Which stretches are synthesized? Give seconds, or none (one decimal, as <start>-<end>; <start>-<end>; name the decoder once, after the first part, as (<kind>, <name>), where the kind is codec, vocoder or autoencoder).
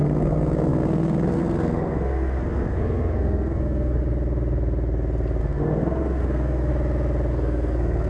0.0-4.0 (codec, SNAC); 5.4-6.7; 7.3-8.1